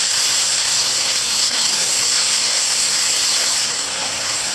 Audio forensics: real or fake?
fake